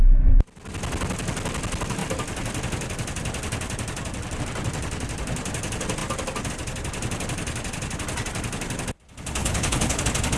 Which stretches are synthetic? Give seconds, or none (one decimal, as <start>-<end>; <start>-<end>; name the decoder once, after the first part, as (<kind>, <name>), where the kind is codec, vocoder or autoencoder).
9.4-10.0 (codec, HILCodec)